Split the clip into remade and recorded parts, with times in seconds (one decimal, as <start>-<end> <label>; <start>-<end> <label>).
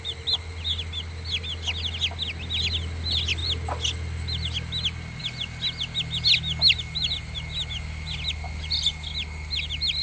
0.0-10.0 recorded